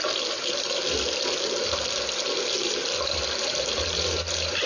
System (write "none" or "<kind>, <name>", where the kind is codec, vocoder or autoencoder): none